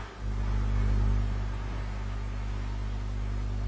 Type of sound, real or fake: real